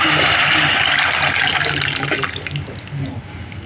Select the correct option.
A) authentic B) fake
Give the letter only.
A